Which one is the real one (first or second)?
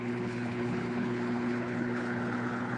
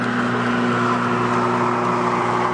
second